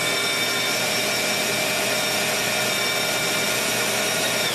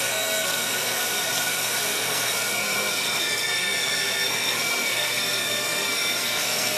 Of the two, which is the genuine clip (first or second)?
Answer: first